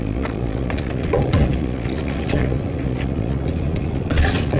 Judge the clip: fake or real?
fake